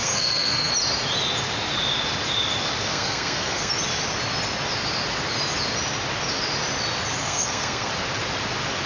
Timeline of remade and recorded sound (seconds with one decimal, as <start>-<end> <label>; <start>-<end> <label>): 0.0-0.7 remade; 0.7-2.9 recorded; 2.9-3.7 remade; 3.7-7.2 recorded; 7.2-7.9 remade; 7.9-8.9 recorded